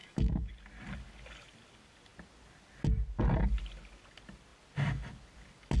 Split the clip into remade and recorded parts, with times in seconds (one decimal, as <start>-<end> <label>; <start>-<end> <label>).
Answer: 0.0-0.5 remade; 0.5-5.8 recorded